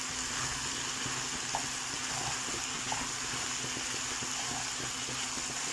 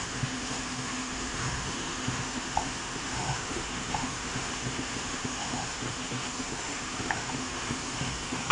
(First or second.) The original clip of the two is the first